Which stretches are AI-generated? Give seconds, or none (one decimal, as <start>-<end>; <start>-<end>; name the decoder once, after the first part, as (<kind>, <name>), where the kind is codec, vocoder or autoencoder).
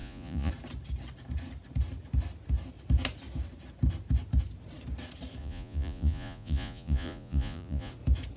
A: 0.0-0.5 (vocoder, Vocos); 5.4-7.9